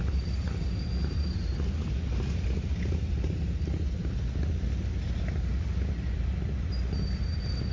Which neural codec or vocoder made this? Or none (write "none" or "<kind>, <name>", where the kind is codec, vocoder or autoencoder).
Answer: none